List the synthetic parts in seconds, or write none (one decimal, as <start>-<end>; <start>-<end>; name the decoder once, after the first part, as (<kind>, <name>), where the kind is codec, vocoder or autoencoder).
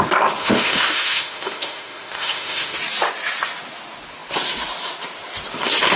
0.4-2.8 (autoencoder, DAC-VAE)